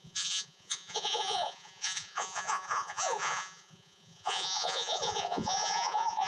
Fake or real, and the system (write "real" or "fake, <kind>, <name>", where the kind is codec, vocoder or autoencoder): fake, vocoder, Vocos